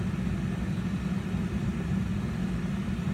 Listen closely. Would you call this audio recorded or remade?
recorded